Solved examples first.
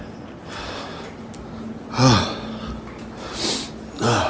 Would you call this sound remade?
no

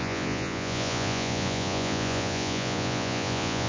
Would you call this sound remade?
yes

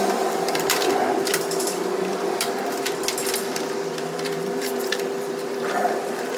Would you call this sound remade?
yes